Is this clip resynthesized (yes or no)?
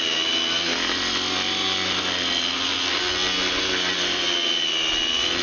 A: no